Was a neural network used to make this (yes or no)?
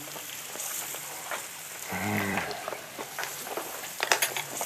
yes